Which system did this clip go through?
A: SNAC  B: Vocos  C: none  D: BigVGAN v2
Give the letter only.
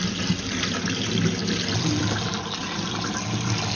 C